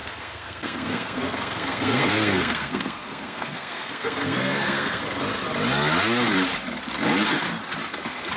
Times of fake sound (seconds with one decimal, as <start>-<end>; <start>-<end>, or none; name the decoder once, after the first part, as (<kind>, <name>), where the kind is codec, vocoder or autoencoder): 0.0-5.0 (codec, SNAC)